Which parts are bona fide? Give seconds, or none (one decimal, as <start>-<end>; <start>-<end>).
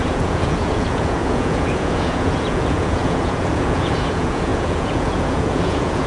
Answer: none